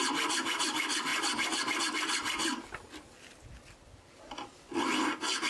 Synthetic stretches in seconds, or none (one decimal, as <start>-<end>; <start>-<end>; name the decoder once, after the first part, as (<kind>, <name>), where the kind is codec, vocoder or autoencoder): none

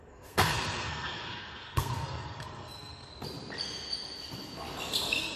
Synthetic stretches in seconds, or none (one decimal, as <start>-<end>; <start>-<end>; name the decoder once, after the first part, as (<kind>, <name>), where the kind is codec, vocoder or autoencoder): 0.0-3.1 (codec, SNAC); 4.9-5.4

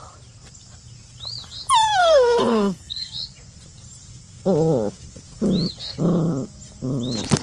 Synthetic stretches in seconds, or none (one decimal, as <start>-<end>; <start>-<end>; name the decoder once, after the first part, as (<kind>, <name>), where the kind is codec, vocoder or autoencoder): 2.0-3.1 (codec, SNAC)

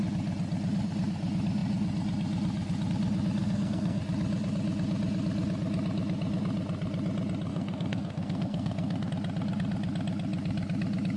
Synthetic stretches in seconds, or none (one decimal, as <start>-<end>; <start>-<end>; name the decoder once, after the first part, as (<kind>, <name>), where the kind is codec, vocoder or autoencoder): 3.4-4.0 (codec, SNAC); 7.5-9.1

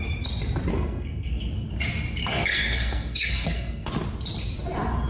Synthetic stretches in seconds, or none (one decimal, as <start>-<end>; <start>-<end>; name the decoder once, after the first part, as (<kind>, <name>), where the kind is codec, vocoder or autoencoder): 0.7-1.4 (codec, SNAC); 2.2-3.9

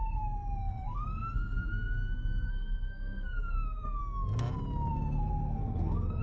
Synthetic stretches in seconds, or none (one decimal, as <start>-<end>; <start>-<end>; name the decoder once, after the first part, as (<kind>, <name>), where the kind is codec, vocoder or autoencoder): 0.0-4.0 (codec, SNAC); 4.9-6.2

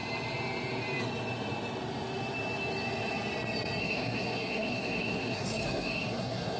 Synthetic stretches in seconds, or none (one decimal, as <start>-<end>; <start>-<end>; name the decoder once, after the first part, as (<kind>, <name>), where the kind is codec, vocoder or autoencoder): 3.8-6.6 (codec, SNAC)

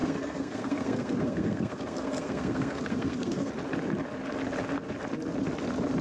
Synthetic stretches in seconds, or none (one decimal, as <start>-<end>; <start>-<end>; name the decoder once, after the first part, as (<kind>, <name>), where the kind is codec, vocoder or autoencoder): 0.0-3.5 (codec, SNAC)